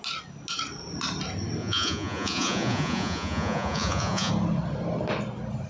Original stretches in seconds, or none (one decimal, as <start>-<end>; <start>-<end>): 0.0-1.6; 4.3-5.7